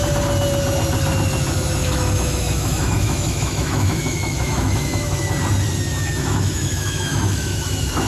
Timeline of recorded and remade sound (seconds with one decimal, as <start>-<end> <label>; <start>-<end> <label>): 0.0-1.8 recorded; 1.8-5.3 remade; 5.3-5.9 recorded; 5.9-8.1 remade